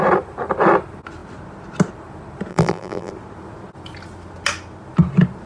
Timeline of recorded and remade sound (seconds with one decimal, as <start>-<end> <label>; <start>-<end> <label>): 0.0-2.5 recorded; 2.5-3.1 remade; 3.1-5.5 recorded